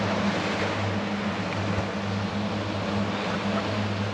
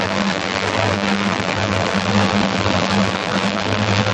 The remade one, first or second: second